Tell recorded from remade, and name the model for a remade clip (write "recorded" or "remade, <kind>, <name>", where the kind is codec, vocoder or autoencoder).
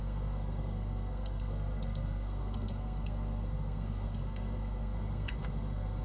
remade, codec, SNAC